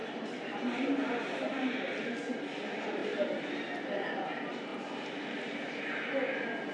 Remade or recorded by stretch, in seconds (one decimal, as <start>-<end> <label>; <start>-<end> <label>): 0.0-1.7 remade; 1.7-4.7 recorded; 4.7-5.8 remade; 5.8-6.7 recorded